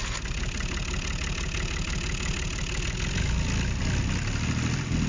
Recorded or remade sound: recorded